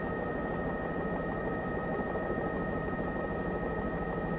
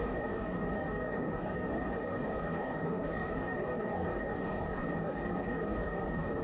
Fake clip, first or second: second